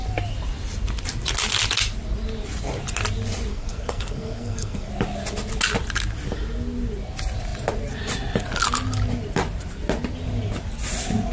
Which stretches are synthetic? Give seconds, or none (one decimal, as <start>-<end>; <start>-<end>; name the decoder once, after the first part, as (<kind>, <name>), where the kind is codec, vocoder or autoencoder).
3.5-4.9 (codec, SNAC)